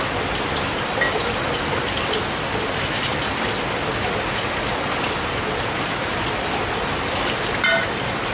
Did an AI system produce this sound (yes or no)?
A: no